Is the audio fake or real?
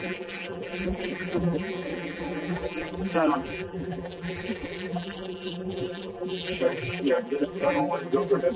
fake